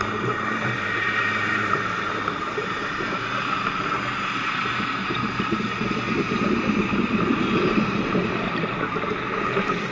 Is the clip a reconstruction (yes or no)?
yes